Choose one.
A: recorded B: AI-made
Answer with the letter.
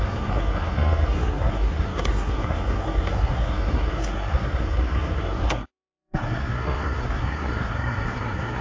B